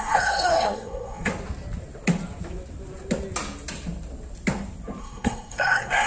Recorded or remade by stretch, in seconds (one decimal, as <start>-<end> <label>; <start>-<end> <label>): 0.0-1.3 remade; 1.3-5.0 recorded; 5.0-6.1 remade